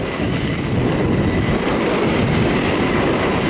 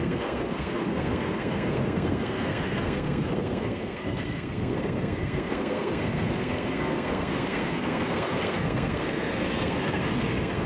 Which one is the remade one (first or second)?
second